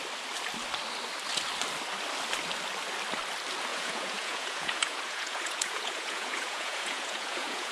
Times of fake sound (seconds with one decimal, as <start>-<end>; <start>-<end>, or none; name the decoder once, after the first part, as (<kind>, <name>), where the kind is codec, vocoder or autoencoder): 3.7-7.7 (vocoder, Vocos)